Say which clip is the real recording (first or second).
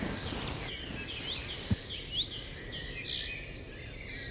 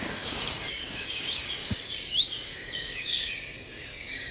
first